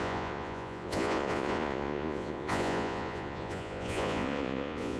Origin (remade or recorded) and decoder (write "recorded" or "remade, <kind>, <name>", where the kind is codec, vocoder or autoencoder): remade, vocoder, Vocos